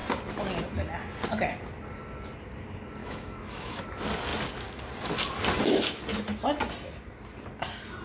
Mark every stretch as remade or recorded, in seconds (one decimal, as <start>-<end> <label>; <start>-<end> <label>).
0.0-3.0 recorded; 3.0-3.8 remade; 3.8-8.0 recorded